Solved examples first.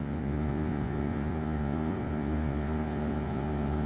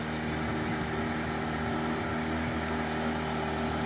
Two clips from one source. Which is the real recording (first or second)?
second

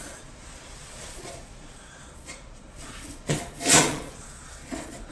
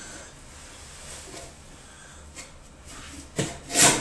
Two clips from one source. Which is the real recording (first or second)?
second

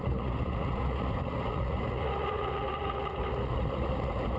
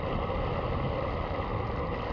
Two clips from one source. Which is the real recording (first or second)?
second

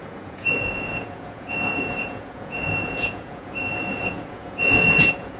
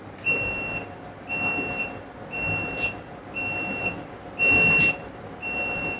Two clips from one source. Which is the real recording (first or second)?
second